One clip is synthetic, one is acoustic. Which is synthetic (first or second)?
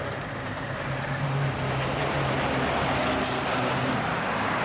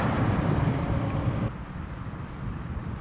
first